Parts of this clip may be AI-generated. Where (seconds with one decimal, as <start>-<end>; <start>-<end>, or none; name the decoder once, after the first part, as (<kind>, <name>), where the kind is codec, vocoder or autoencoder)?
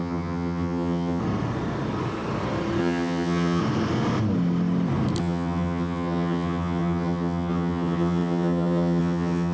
0.0-1.2 (vocoder, HiFi-GAN); 2.8-3.6; 5.2-9.5